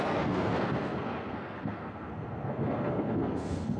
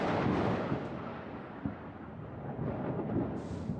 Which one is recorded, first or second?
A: second